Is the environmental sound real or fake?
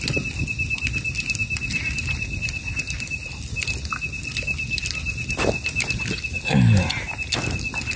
real